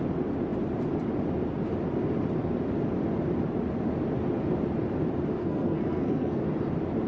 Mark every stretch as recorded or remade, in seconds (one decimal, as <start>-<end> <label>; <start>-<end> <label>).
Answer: 0.0-5.4 recorded; 5.4-6.4 remade; 6.4-7.1 recorded